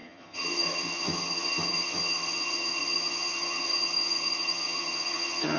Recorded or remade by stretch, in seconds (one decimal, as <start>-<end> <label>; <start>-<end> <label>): 0.0-5.6 remade